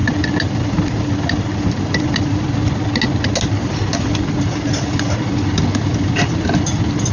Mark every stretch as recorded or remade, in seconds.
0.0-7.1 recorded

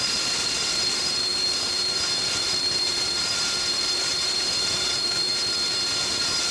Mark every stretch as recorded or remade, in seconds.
0.0-5.3 remade; 5.3-6.0 recorded; 6.0-6.5 remade

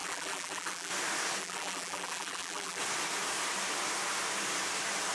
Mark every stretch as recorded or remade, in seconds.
0.0-0.9 remade; 0.9-1.4 recorded; 1.4-2.8 remade; 2.8-5.1 recorded

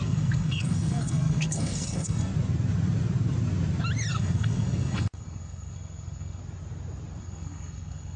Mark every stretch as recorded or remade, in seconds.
0.0-2.3 remade; 2.3-4.1 recorded; 4.1-6.4 remade; 6.4-7.2 recorded; 7.2-8.2 remade

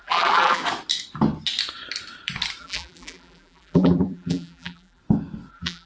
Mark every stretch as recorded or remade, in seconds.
0.0-0.6 remade; 0.6-2.6 recorded; 2.6-5.0 remade; 5.0-5.5 recorded; 5.5-5.9 remade